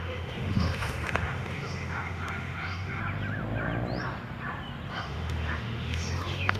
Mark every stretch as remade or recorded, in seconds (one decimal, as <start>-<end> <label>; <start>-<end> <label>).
0.0-3.0 remade; 3.0-4.9 recorded; 4.9-6.6 remade